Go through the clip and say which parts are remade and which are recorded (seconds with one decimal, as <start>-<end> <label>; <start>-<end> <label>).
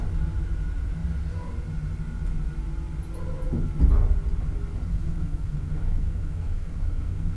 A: 0.0-4.9 recorded; 4.9-7.4 remade